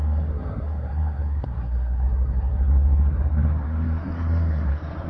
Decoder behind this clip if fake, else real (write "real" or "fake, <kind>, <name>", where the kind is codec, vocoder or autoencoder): fake, codec, SNAC